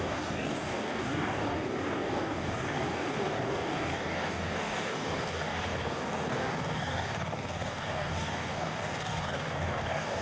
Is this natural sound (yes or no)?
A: no